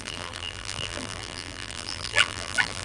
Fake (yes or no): yes